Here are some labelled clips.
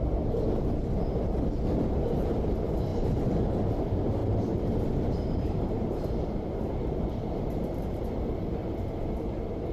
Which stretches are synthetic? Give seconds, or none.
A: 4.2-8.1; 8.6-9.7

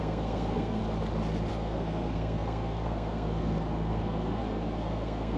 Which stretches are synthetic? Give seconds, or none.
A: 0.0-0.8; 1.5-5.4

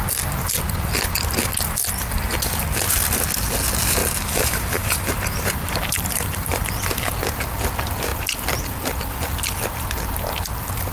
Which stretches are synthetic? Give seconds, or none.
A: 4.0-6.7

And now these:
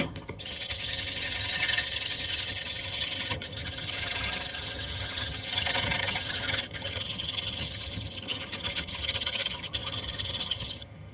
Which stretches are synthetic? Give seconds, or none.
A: 0.0-11.1